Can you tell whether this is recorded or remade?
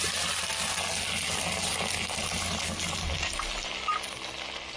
recorded